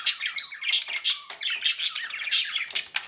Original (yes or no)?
yes